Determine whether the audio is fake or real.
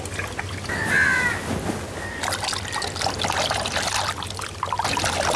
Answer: real